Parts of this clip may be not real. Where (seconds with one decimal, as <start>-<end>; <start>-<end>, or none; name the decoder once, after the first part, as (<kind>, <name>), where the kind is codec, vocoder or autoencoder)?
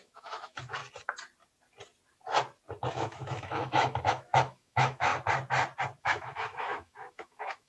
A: 0.0-0.8 (autoencoder, DAC-VAE); 2.9-5.1; 6.0-7.7